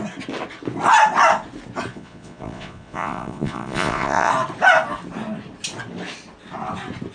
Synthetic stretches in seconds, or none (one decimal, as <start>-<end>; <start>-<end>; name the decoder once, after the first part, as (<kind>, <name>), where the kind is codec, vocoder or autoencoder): 1.9-4.3 (vocoder, Vocos)